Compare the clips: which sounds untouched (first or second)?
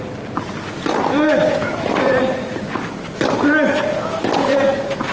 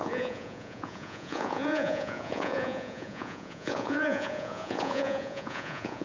first